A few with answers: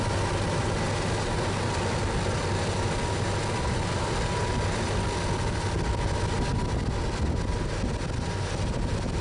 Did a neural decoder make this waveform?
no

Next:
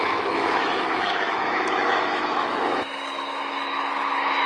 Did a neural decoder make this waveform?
yes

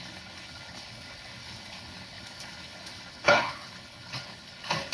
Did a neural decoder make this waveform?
yes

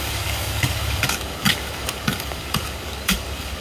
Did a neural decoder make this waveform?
yes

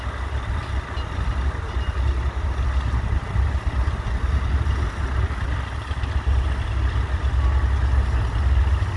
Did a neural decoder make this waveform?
no